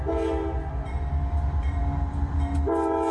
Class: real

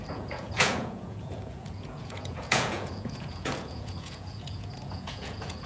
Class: fake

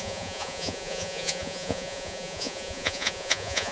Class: fake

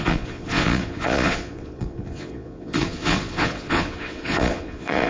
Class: fake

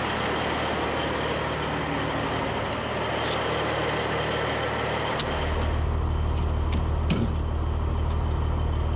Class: real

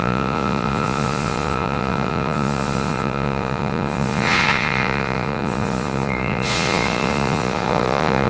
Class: fake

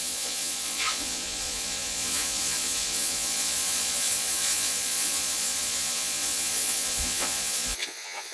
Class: fake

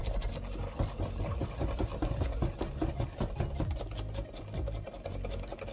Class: real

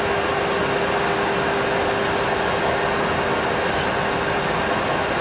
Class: real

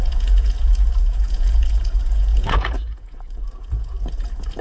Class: fake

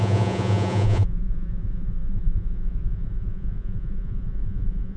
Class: fake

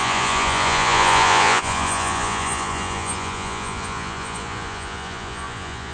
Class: fake